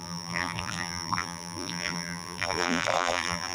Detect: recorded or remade remade